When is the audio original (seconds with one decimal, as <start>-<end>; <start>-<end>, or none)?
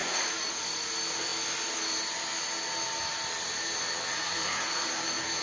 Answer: 0.9-4.1; 4.9-5.4